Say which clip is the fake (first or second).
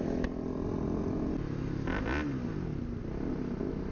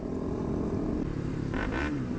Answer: second